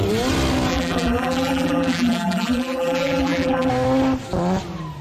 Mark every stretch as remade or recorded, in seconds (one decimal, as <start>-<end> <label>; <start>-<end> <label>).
0.0-0.7 recorded; 0.7-3.7 remade; 3.7-5.0 recorded